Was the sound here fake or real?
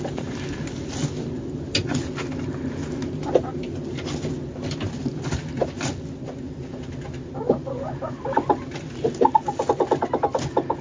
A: real